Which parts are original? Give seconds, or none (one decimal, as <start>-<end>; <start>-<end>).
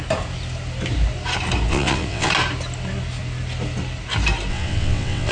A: 0.0-1.7; 2.3-4.5